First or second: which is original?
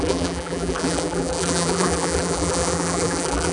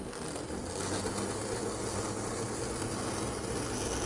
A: second